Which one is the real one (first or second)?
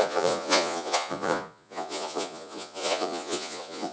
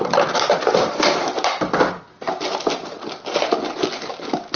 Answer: second